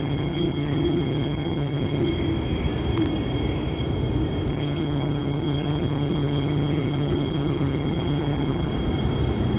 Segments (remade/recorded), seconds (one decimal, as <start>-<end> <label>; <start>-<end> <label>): 0.0-2.1 remade; 2.1-4.5 recorded; 4.5-8.7 remade; 8.7-9.6 recorded